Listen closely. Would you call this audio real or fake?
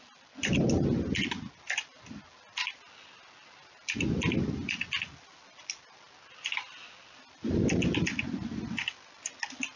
real